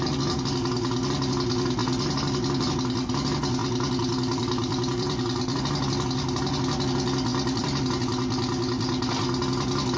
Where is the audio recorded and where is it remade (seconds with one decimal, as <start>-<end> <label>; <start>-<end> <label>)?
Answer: 0.0-3.6 recorded; 3.6-5.6 remade; 5.6-7.3 recorded; 7.3-8.0 remade; 8.0-10.0 recorded